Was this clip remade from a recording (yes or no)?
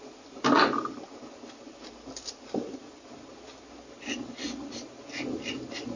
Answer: no